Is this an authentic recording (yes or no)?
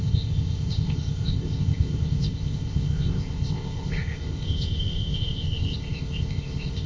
no